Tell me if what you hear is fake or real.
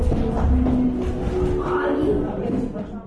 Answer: real